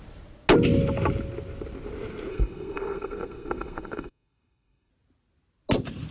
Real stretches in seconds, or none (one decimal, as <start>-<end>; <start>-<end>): 0.0-2.3; 4.9-6.1